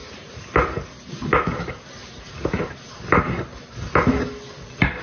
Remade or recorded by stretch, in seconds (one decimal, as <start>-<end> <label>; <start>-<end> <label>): 0.0-0.9 remade; 0.9-2.0 recorded; 2.0-2.9 remade; 2.9-5.0 recorded